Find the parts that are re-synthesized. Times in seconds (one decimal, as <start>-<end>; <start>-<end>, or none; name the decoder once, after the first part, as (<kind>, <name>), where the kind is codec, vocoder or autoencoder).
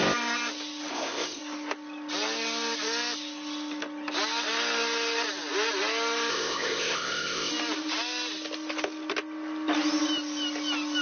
0.9-1.4 (codec, ZipCodec); 6.3-7.5